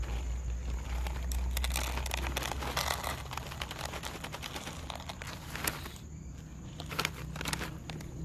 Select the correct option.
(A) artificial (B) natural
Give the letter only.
B